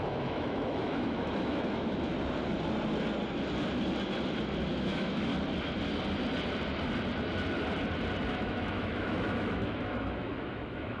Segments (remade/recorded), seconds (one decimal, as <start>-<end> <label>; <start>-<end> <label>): 0.0-2.1 remade; 2.1-4.7 recorded; 4.7-5.3 remade; 5.3-8.3 recorded; 8.3-11.0 remade